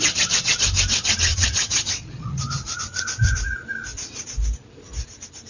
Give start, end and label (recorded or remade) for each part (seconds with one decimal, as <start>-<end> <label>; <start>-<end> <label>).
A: 0.0-1.3 recorded; 1.3-2.3 remade; 2.3-5.5 recorded